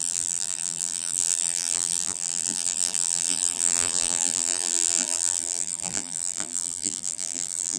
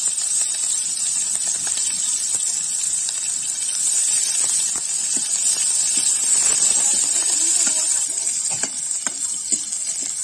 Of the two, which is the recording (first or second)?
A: second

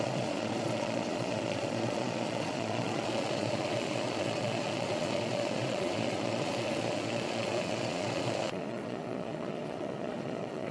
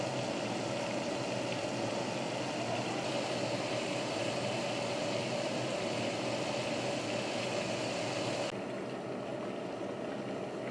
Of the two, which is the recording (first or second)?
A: second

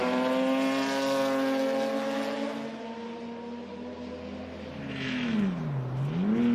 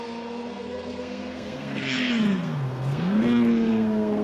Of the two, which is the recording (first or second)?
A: first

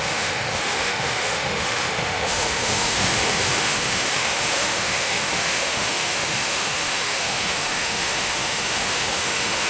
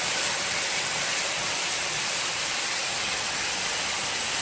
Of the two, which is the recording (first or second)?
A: second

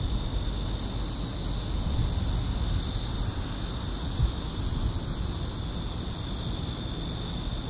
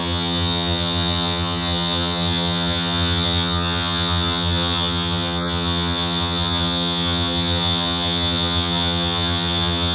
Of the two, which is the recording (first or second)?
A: first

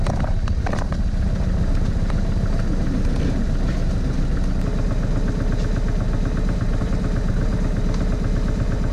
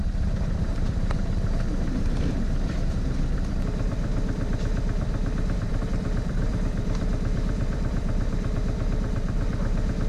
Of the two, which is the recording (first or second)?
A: first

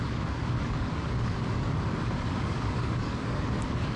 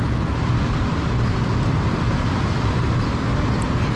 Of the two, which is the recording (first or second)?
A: second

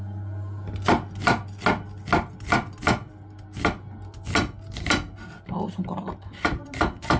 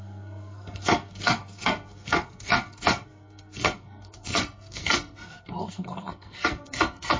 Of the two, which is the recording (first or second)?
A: first